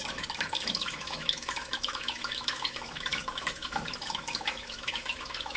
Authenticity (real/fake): fake